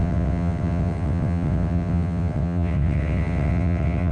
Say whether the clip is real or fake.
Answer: fake